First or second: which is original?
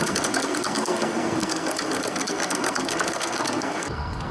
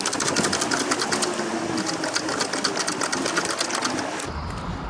second